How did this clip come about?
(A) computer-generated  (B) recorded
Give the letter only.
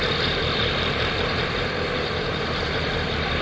A